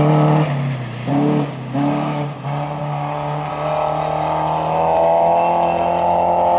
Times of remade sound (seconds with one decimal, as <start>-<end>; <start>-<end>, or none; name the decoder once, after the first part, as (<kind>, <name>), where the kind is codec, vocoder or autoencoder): 1.1-2.4 (codec, DAC); 2.8-3.5